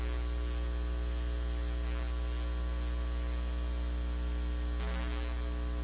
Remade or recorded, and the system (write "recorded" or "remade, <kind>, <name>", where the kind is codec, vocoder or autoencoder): recorded